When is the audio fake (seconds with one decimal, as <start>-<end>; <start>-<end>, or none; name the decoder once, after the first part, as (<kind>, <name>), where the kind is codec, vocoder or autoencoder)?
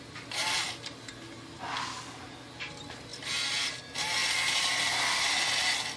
none